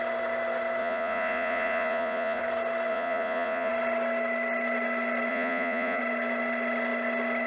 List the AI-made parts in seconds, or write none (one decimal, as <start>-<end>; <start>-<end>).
0.8-2.4; 2.9-3.7; 5.3-6.0